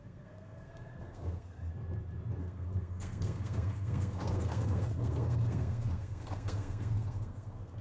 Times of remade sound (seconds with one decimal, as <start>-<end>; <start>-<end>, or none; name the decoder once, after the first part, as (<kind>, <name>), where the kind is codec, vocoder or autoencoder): 0.0-1.7 (codec, SNAC); 2.4-7.8